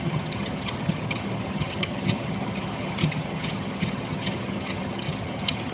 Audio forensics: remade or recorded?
remade